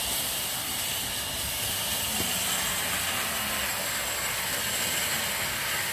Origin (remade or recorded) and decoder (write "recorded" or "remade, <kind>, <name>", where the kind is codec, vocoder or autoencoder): recorded